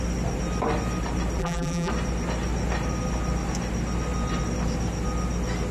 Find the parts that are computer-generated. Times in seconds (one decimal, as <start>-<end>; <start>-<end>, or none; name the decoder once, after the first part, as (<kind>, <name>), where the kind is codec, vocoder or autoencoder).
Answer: 1.4-1.9 (vocoder, BigVGAN v2)